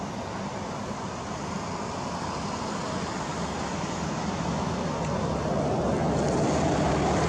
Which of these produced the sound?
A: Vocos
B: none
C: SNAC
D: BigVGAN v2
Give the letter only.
B